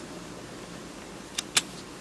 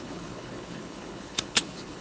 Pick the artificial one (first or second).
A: second